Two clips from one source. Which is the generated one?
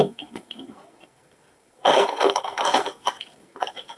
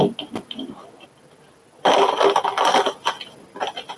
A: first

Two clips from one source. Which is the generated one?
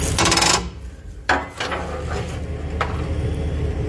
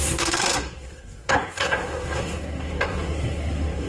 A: second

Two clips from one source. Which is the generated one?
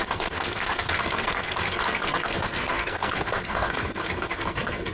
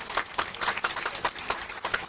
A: first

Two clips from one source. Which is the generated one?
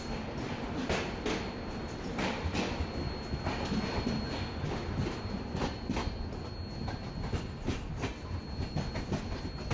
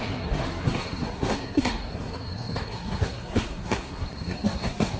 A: second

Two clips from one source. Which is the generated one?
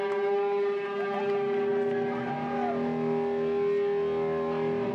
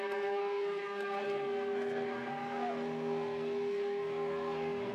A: second